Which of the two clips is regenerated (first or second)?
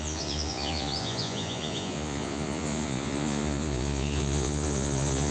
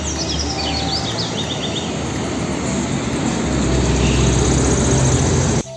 first